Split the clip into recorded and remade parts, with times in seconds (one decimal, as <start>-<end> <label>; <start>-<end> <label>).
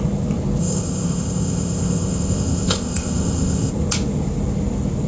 0.0-0.6 recorded; 0.6-3.7 remade; 3.7-5.1 recorded